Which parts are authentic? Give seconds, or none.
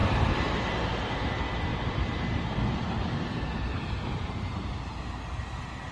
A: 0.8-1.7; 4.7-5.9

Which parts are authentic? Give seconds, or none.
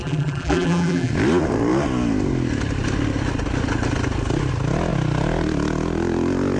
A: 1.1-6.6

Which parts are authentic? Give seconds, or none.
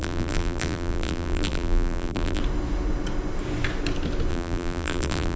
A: 2.4-4.3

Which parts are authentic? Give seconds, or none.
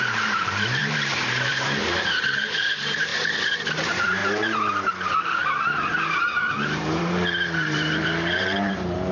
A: 3.1-3.7